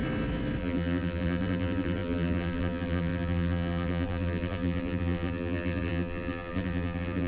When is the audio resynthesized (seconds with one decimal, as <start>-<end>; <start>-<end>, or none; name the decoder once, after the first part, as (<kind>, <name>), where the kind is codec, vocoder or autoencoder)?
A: 0.6-7.3 (vocoder, BigVGAN v2)